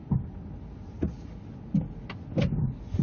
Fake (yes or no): no